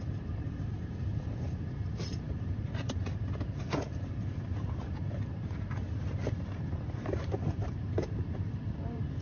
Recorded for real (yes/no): no